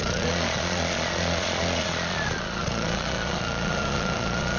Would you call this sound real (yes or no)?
no